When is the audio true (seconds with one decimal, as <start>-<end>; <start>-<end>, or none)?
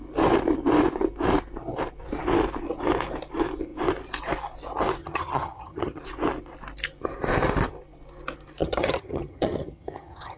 0.0-5.0; 6.0-8.6